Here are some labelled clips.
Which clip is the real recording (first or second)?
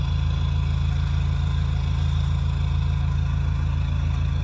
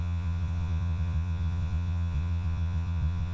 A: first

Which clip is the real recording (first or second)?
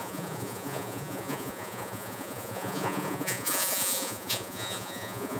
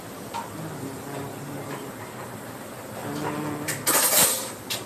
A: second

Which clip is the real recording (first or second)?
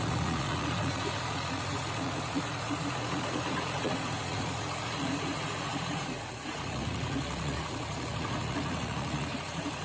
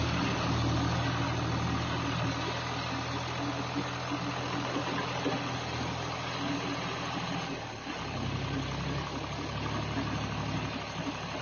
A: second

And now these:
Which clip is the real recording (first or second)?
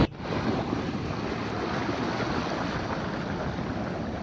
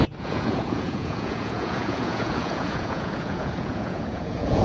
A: first